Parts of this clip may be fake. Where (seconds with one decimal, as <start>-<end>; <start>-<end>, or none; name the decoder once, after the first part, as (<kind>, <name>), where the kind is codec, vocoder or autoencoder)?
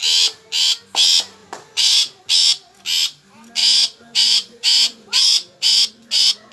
1.4-2.2 (vocoder, Vocos); 3.6-6.5